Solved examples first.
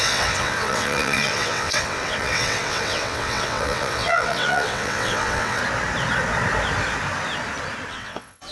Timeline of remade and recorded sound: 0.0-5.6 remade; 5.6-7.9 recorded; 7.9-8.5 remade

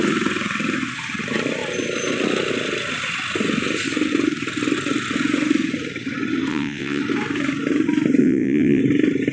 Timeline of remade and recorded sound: 0.0-6.5 recorded; 6.5-7.0 remade; 7.0-8.2 recorded; 8.2-8.8 remade; 8.8-9.3 recorded

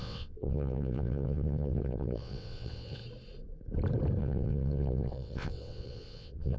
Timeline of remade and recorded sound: 0.0-3.0 remade; 3.0-4.2 recorded; 4.2-6.6 remade

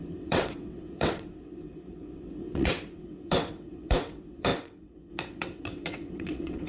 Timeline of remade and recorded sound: 0.0-6.7 remade

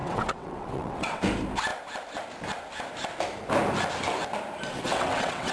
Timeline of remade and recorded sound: 0.0-1.2 remade; 1.2-4.7 recorded; 4.7-5.5 remade

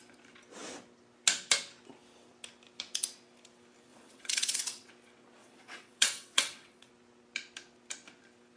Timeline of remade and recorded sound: 0.0-3.9 recorded; 3.9-4.9 remade; 4.9-5.4 recorded; 5.4-6.9 remade; 6.9-8.6 recorded

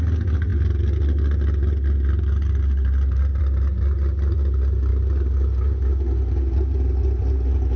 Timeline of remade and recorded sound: 0.0-7.8 recorded